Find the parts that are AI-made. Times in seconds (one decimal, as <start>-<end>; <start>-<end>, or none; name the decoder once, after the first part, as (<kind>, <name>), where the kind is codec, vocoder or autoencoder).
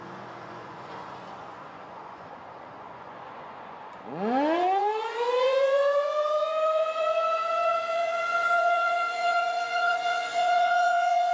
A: 0.0-11.3 (vocoder, Vocos)